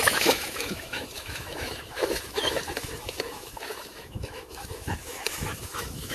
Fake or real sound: fake